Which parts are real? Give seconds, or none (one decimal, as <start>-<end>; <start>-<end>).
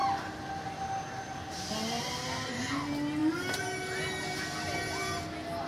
0.0-5.7